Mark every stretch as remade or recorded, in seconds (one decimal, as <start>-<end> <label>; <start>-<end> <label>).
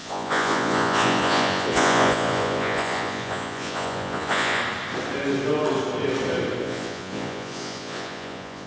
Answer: 0.0-4.6 remade; 4.6-6.6 recorded; 6.6-8.7 remade